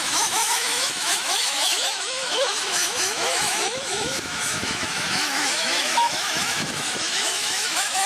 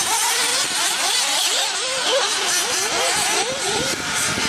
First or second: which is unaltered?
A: second